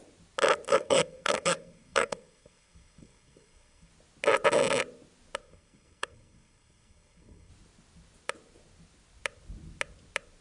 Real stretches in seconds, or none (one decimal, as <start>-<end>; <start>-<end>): 0.0-0.7; 3.9-5.4; 7.5-10.4